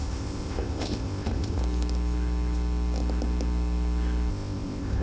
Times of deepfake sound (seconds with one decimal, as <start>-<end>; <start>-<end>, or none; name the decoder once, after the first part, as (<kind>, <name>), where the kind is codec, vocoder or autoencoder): 0.0-1.6 (codec, ZipCodec); 4.3-5.0